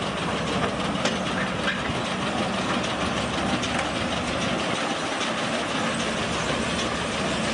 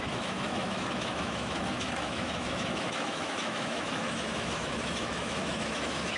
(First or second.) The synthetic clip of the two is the second